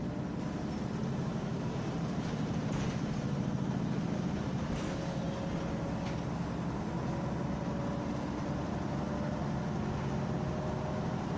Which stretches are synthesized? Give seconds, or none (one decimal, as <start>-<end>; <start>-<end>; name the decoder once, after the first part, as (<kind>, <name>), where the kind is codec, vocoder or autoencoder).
1.0-5.2 (vocoder, BigVGAN v2)